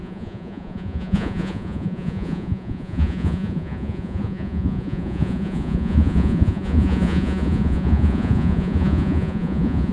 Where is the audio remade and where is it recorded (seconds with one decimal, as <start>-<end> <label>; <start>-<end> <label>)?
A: 0.0-9.9 remade